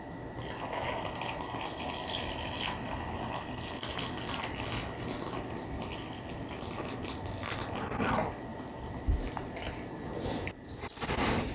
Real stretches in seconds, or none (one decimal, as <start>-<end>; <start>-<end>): 0.0-11.5